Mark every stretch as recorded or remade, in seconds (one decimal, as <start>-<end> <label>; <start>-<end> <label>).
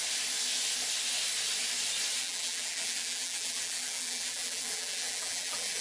0.0-2.2 recorded; 2.2-5.8 remade